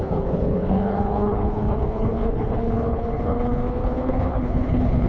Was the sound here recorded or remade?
remade